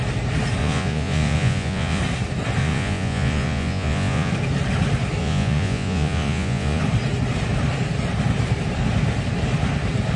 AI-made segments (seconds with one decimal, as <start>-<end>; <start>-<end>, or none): 0.6-2.0; 2.6-4.3; 5.2-6.8

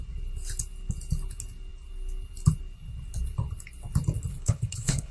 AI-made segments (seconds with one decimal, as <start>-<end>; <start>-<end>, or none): 4.3-5.1

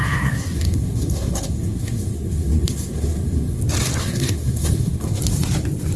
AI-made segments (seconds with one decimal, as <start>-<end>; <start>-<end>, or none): 0.0-3.6; 4.0-5.2

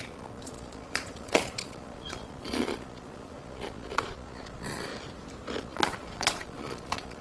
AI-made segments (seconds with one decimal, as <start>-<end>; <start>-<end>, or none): 0.0-4.9; 5.6-7.2

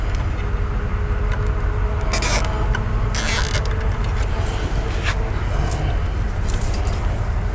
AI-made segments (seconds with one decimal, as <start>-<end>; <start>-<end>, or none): none